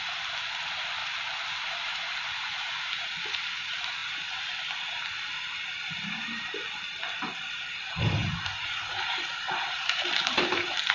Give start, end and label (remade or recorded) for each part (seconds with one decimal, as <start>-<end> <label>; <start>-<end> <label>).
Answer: 0.0-1.0 remade; 1.0-1.7 recorded; 1.7-4.0 remade; 4.0-7.8 recorded; 7.8-10.9 remade